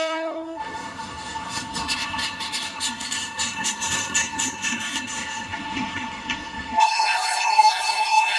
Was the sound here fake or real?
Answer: fake